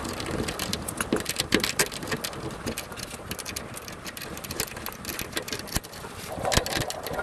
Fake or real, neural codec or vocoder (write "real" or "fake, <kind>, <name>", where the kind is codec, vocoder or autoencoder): real